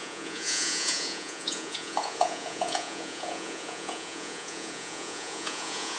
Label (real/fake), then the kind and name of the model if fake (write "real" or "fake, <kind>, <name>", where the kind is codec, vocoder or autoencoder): fake, vocoder, Vocos